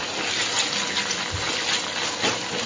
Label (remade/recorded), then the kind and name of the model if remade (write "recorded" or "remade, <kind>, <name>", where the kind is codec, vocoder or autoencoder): recorded